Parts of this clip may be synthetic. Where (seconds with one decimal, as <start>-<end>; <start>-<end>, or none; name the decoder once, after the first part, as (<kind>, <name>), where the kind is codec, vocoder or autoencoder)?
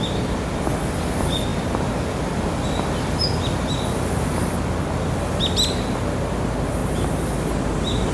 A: 6.8-8.1 (vocoder, BigVGAN v2)